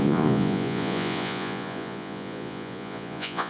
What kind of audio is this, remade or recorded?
remade